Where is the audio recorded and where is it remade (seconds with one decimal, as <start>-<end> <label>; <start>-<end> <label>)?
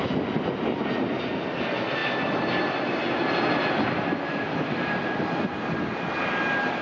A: 0.0-6.8 recorded